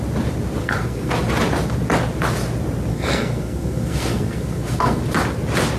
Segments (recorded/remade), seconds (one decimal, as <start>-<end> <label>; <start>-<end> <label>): 0.0-0.6 recorded; 0.6-1.1 remade; 1.1-2.9 recorded; 2.9-5.0 remade; 5.0-5.8 recorded